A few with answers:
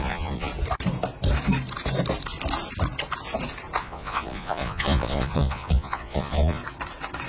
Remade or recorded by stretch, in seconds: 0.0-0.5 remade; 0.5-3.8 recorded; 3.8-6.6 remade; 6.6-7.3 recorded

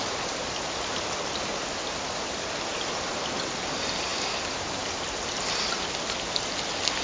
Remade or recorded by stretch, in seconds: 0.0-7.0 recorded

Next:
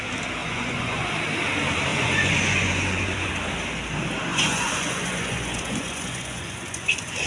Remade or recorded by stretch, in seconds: 0.0-0.4 recorded; 0.4-1.1 remade; 1.1-1.9 recorded; 1.9-3.3 remade; 3.3-4.3 recorded; 4.3-7.3 remade

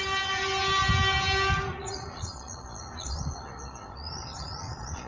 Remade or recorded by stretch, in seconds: 0.0-1.7 recorded; 1.7-5.1 remade

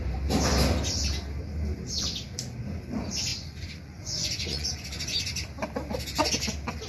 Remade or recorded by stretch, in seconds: 0.0-3.3 recorded; 3.3-5.2 remade; 5.2-6.9 recorded

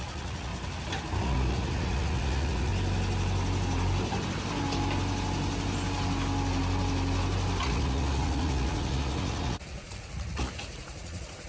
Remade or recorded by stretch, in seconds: 0.0-0.5 remade; 0.5-1.2 recorded; 1.2-2.7 remade; 2.7-7.6 recorded; 7.6-11.5 remade